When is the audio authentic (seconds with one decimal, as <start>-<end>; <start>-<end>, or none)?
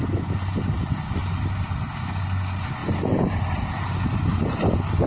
0.0-2.8; 3.4-5.1